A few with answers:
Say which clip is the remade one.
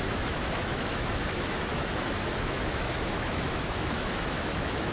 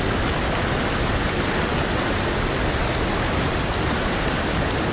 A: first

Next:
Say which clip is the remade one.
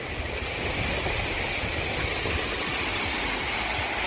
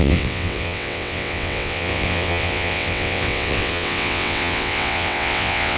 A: second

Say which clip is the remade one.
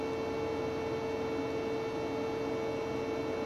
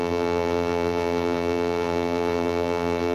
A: second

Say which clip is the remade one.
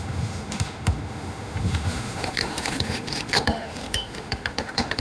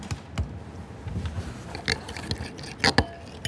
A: first